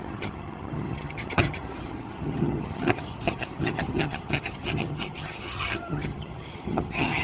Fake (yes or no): yes